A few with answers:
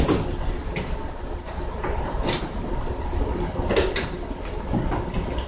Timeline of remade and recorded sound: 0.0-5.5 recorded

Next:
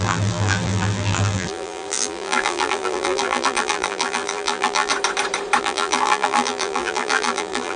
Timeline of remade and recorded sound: 0.0-4.9 remade; 4.9-5.6 recorded; 5.6-7.8 remade

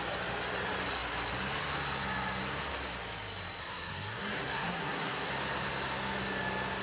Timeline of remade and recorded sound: 0.0-3.6 recorded; 3.6-5.3 remade; 5.3-6.8 recorded

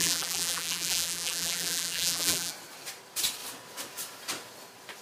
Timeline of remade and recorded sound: 0.0-2.5 remade; 2.5-5.0 recorded

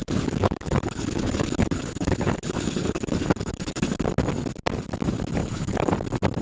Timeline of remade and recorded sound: 0.0-3.8 remade; 3.8-5.4 recorded; 5.4-5.9 remade; 5.9-6.4 recorded

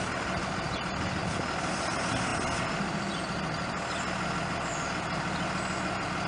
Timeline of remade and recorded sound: 0.0-6.3 recorded

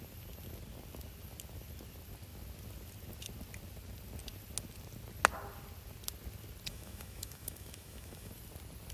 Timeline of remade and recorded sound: 0.0-6.7 recorded; 6.7-8.3 remade; 8.3-8.9 recorded